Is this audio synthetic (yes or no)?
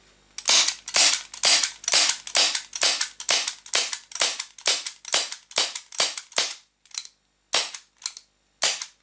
no